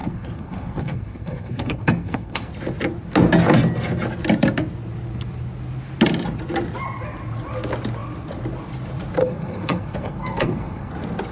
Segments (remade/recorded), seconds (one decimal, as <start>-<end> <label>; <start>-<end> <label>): 0.0-2.5 remade; 2.5-9.2 recorded; 9.2-10.9 remade; 10.9-11.3 recorded